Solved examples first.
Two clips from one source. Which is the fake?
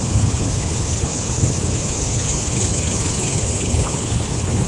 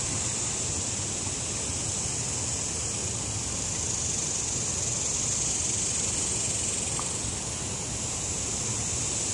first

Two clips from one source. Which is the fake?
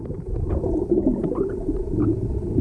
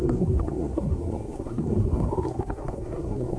second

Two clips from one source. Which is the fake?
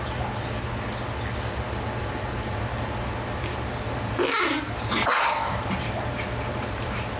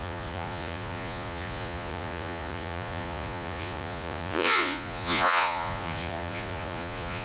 second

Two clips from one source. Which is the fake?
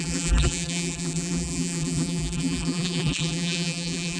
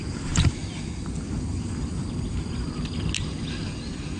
first